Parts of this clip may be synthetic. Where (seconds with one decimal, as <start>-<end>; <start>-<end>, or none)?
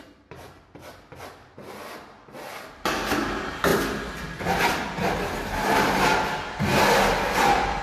none